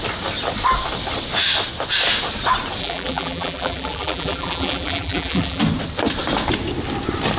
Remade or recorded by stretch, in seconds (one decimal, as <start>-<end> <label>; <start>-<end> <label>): 0.0-2.8 recorded; 2.8-5.6 remade; 5.6-7.4 recorded